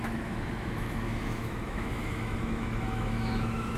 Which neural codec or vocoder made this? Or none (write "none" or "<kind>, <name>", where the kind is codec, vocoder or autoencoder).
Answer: autoencoder, DAC-VAE